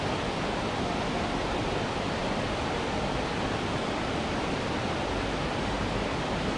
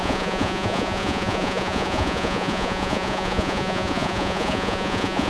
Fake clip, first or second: second